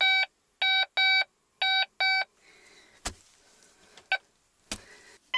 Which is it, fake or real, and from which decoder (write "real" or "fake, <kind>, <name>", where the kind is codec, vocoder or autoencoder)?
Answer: real